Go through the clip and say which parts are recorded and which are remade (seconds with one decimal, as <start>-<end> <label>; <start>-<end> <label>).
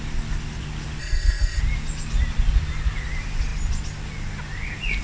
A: 0.0-1.0 recorded; 1.0-1.6 remade; 1.6-5.0 recorded